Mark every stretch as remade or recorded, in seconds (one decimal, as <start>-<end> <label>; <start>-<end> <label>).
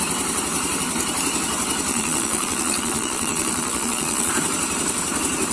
0.0-1.9 recorded; 1.9-4.3 remade; 4.3-5.5 recorded